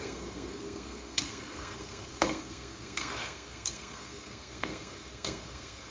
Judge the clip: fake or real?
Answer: fake